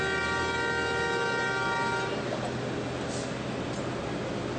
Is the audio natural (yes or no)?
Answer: yes